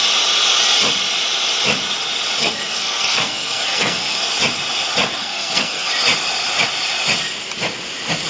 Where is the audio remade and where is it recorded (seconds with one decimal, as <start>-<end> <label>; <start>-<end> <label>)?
0.0-2.4 recorded; 2.4-4.2 remade; 4.2-5.2 recorded; 5.2-5.9 remade; 5.9-8.3 recorded

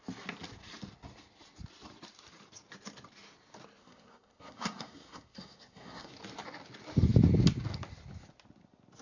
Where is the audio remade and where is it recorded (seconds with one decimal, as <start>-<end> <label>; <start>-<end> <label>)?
0.0-3.8 recorded; 3.8-6.1 remade; 6.1-9.0 recorded

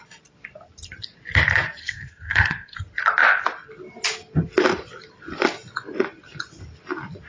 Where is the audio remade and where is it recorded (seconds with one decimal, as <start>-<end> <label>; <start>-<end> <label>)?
0.0-1.8 recorded; 1.8-2.8 remade; 2.8-7.3 recorded

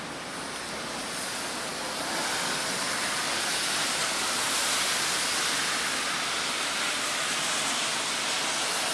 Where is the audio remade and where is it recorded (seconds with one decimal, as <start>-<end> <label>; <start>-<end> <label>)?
0.0-8.9 recorded

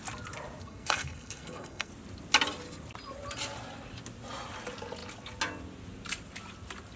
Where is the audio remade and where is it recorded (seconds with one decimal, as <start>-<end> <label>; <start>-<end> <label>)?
0.0-0.6 recorded; 0.6-1.9 remade; 1.9-7.0 recorded

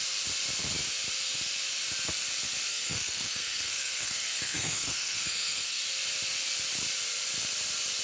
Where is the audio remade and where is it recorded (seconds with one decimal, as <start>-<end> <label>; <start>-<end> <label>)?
0.0-2.7 recorded; 2.7-5.8 remade; 5.8-8.0 recorded

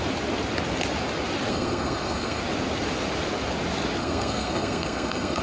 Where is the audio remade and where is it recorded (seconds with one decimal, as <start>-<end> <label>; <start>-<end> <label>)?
0.0-1.5 recorded; 1.5-2.4 remade; 2.4-4.0 recorded; 4.0-5.4 remade